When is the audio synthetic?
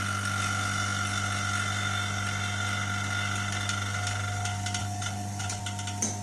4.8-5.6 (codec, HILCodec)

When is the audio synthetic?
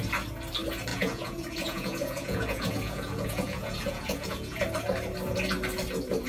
0.9-4.6 (vocoder, Vocos)